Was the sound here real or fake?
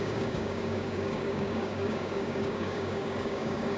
fake